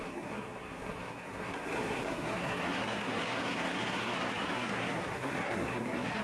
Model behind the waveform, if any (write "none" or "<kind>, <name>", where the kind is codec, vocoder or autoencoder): codec, SNAC